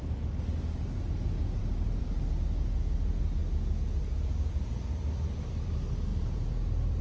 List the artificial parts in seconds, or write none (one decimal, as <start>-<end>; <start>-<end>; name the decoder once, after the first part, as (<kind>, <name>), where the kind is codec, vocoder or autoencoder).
1.6-2.2 (vocoder, BigVGAN v2); 6.1-7.0